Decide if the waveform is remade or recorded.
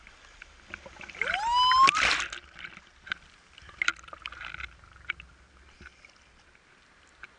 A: recorded